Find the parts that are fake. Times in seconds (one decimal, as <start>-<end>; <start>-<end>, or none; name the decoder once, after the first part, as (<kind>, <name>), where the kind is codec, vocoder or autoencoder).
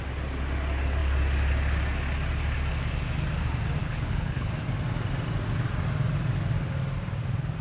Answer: 3.8-4.5 (codec, HILCodec)